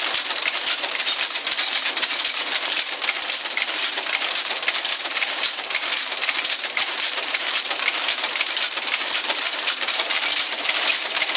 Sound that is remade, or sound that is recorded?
remade